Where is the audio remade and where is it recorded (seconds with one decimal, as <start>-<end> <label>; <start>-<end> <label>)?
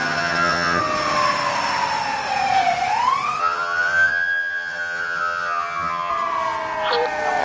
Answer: 0.0-0.8 remade; 0.8-3.4 recorded; 3.4-6.1 remade; 6.1-7.4 recorded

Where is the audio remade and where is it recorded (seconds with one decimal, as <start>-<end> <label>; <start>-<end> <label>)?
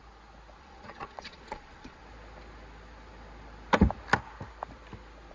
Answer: 0.0-0.6 recorded; 0.6-2.0 remade; 2.0-5.3 recorded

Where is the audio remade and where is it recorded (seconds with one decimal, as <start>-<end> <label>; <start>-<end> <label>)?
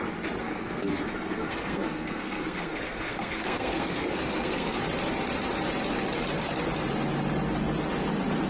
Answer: 0.0-0.4 recorded; 0.4-4.8 remade; 4.8-8.5 recorded